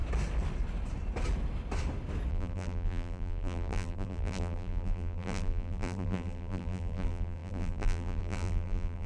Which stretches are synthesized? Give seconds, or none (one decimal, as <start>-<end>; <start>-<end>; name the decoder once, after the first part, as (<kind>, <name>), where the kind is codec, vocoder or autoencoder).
2.3-9.1 (vocoder, BigVGAN v2)